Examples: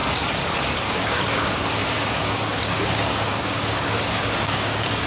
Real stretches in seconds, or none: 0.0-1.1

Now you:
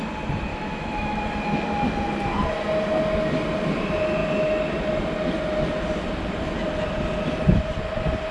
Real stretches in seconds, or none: 0.0-0.5; 1.2-8.3